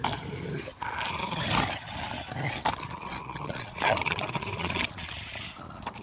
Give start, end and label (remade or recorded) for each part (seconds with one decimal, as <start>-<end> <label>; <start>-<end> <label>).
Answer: 0.0-3.0 recorded; 3.0-5.1 remade; 5.1-6.0 recorded